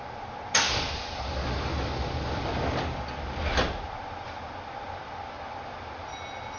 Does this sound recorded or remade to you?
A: recorded